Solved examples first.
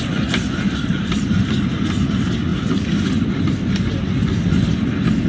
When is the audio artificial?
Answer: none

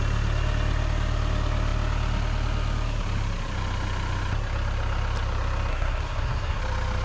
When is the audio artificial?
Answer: 5.7-6.6 (codec, SNAC)

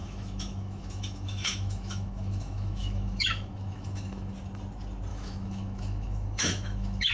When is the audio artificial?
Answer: 0.0-4.3 (autoencoder, DAC-VAE); 5.1-7.1

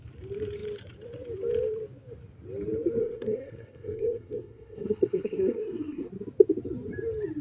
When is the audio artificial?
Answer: 3.0-6.1 (codec, SNAC)

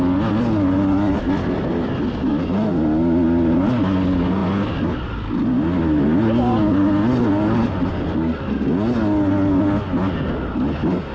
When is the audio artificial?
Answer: none